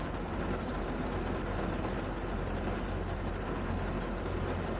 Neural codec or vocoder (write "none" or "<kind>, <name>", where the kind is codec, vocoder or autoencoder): none